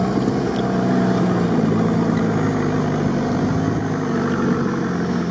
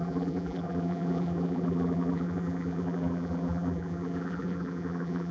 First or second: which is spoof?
second